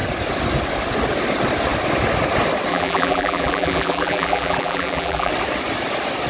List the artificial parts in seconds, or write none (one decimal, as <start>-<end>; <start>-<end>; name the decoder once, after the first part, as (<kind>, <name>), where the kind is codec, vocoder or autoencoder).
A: 2.7-5.3 (vocoder, BigVGAN v2)